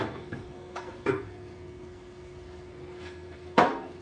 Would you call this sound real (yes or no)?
no